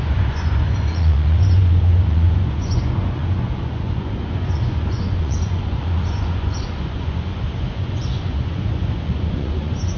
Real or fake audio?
fake